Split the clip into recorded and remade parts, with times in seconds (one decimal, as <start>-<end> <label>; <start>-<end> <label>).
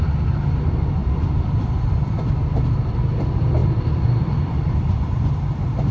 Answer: 0.0-5.9 recorded